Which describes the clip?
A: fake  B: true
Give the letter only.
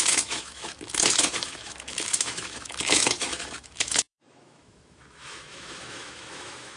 A